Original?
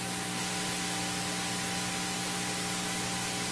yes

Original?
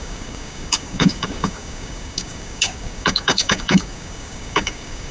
no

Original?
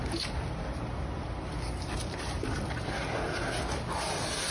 yes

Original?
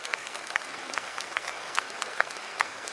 no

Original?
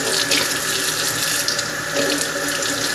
yes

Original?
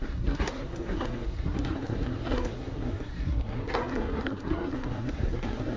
no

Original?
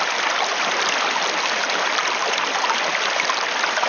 yes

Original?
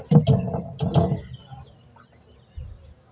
yes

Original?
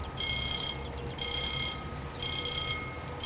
yes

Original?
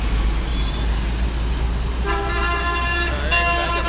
yes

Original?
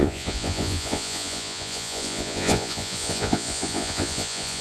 no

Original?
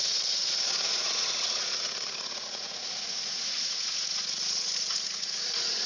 no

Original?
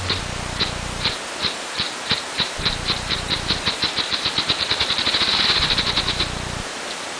no